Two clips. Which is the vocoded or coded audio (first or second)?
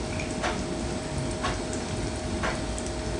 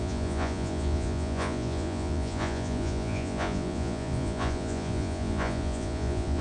second